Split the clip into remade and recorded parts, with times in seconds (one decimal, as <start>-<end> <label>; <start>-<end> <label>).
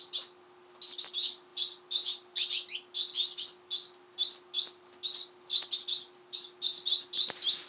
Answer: 0.0-7.7 recorded